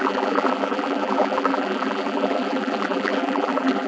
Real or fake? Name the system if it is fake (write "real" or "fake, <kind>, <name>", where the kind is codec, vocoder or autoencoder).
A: fake, vocoder, BigVGAN v2